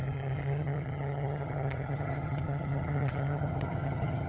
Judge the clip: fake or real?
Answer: fake